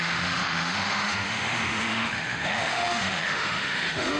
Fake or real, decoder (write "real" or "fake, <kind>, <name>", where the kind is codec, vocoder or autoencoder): fake, autoencoder, DAC-VAE